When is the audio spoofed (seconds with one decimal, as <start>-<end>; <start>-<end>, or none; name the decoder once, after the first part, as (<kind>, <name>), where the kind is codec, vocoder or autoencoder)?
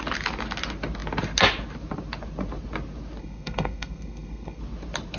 3.2-4.6 (codec, SNAC)